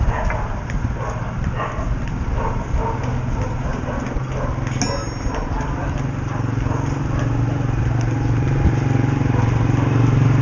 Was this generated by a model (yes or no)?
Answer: no